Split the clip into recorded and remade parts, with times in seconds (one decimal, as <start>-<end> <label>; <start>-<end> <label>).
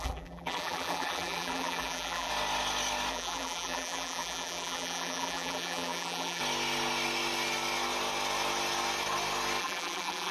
0.0-2.3 remade; 2.3-3.1 recorded; 3.1-6.4 remade; 6.4-9.6 recorded; 9.6-10.3 remade